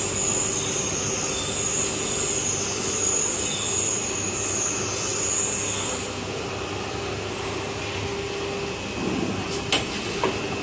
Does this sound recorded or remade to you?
recorded